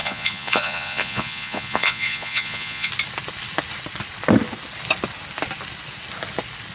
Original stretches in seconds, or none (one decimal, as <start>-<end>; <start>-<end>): 2.9-6.7